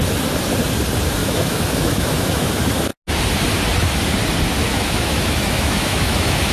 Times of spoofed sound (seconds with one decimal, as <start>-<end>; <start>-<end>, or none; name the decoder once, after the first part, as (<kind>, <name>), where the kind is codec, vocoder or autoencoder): 1.2-2.5 (autoencoder, DAC-VAE); 4.6-6.5